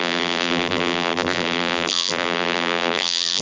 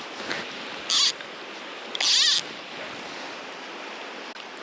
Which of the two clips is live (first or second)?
second